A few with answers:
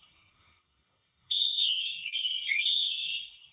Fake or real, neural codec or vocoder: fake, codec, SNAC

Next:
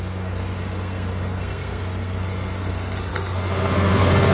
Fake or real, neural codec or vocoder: fake, codec, SNAC